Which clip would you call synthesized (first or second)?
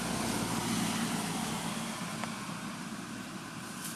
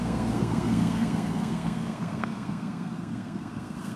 second